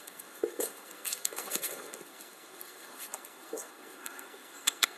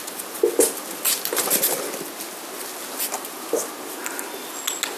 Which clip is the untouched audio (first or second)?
second